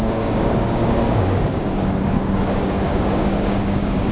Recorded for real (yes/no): no